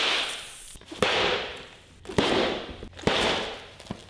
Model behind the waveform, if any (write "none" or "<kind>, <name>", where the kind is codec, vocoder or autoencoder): none